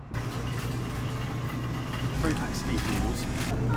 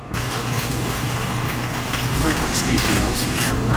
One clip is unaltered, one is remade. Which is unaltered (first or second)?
first